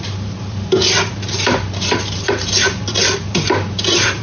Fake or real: fake